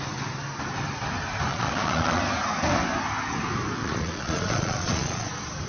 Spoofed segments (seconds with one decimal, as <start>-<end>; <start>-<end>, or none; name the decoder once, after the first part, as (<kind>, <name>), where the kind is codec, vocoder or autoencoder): 1.5-2.2 (vocoder, Vocos); 3.8-5.3